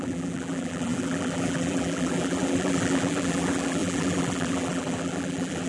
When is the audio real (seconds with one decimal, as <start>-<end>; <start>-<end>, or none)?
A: none